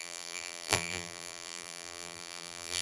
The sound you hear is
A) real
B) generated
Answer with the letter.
B